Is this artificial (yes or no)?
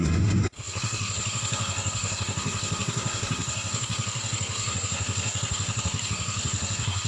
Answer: yes